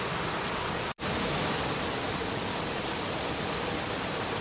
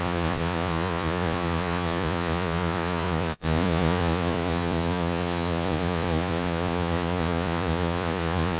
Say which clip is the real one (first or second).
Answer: first